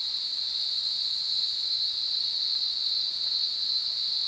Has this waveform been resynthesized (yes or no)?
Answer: no